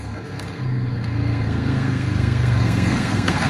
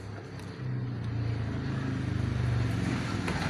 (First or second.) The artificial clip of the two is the first